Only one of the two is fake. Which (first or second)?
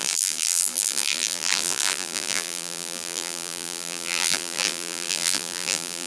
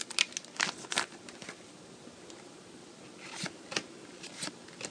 first